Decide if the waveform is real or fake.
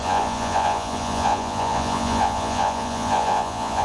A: fake